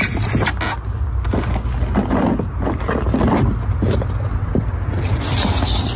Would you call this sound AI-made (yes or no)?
no